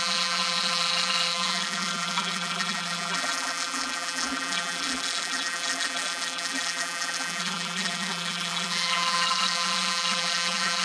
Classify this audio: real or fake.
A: fake